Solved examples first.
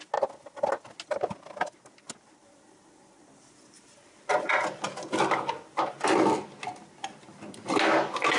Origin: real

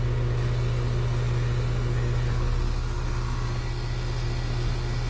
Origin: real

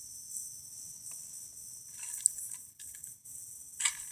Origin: real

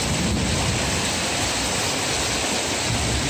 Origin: real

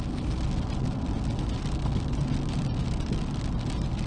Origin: real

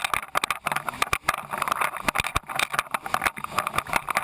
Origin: real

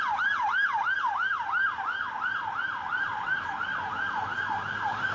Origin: real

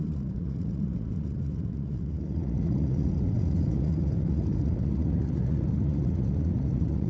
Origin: fake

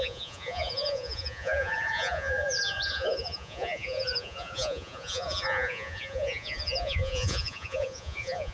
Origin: fake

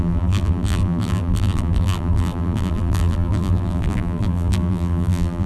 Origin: fake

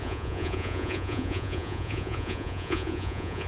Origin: fake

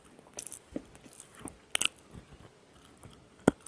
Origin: real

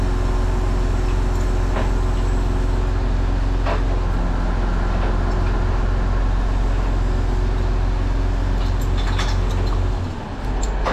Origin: real